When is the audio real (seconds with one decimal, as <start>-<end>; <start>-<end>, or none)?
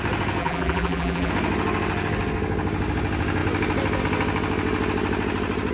0.0-0.4; 1.3-5.7